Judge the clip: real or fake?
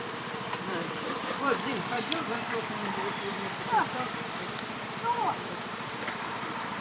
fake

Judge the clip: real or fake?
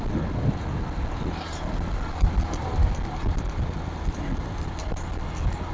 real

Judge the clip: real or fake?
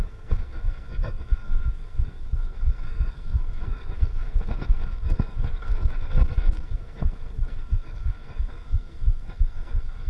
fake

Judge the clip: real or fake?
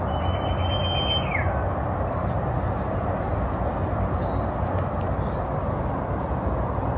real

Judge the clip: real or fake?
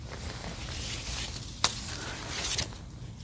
real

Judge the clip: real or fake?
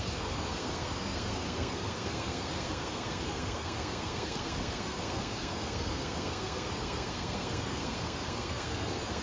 fake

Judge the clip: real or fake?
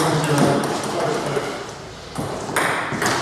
real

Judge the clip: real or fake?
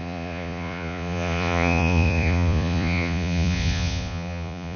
fake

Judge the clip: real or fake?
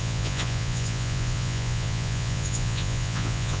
fake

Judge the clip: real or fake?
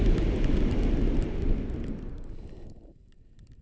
real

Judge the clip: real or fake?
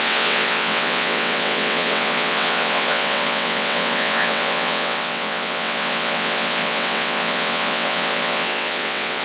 fake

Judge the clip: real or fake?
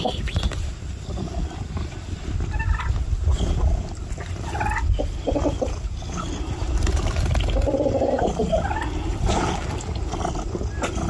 real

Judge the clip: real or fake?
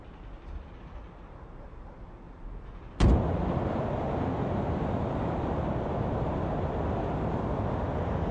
real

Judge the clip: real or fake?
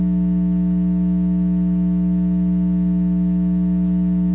real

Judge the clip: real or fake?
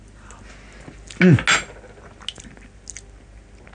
real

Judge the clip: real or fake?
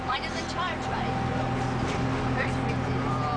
real